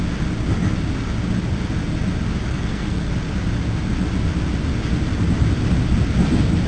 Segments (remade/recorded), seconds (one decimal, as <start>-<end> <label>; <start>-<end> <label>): 0.0-2.5 recorded; 2.5-3.1 remade; 3.1-6.7 recorded